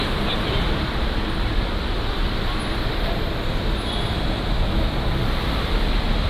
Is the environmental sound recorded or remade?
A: remade